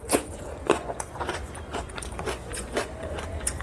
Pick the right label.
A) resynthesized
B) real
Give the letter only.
A